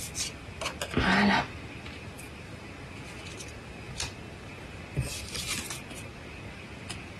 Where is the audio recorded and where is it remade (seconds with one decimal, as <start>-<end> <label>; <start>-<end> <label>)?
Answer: 0.0-7.2 recorded

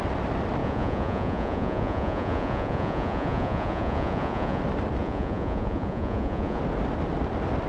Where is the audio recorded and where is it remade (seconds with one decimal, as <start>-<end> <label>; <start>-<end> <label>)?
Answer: 0.0-0.6 recorded; 0.6-4.6 remade; 4.6-5.0 recorded; 5.0-6.6 remade; 6.6-7.7 recorded

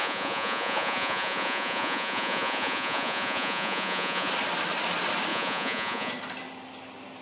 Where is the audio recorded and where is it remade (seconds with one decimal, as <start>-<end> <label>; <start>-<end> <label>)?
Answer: 0.0-4.3 remade; 4.3-5.3 recorded; 5.3-6.1 remade; 6.1-7.2 recorded

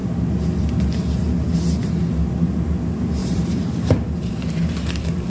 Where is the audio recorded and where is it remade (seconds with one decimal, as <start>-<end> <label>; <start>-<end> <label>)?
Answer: 0.0-3.2 recorded; 3.2-5.3 remade

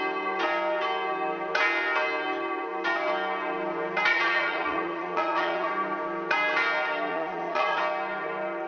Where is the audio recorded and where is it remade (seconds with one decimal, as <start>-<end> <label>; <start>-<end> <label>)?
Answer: 0.0-4.1 recorded; 4.1-5.7 remade; 5.7-7.1 recorded; 7.1-7.8 remade; 7.8-8.7 recorded

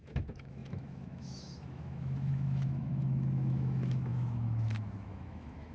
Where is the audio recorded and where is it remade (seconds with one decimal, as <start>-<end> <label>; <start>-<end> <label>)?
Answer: 0.0-5.7 remade

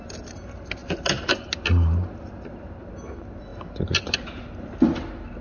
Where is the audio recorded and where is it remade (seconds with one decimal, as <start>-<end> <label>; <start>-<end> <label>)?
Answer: 0.0-5.4 recorded